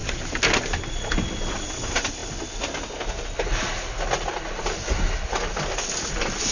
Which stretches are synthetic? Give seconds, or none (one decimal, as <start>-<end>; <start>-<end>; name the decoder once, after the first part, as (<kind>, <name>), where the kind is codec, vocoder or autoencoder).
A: none